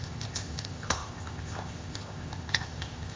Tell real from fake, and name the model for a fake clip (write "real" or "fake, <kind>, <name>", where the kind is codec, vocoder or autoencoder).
fake, codec, ZipCodec